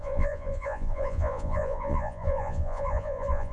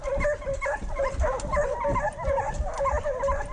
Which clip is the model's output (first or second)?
first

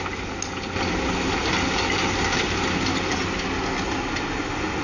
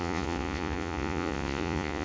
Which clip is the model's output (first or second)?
second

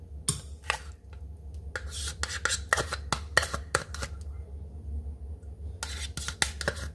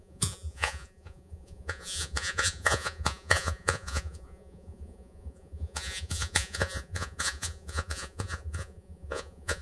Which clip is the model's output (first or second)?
second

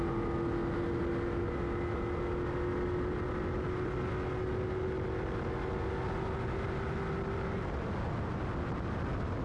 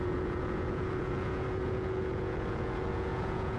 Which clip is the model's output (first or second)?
second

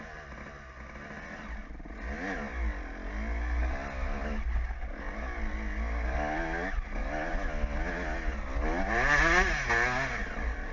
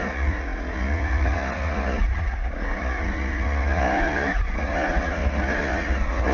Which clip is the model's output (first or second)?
second